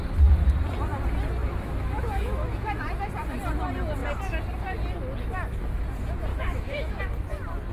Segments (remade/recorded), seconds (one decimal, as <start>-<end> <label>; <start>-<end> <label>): 0.0-1.4 recorded; 1.4-2.8 remade; 2.8-6.3 recorded; 6.3-7.0 remade; 7.0-7.7 recorded